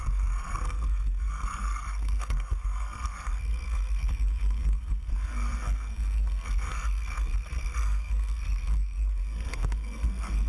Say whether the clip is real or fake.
fake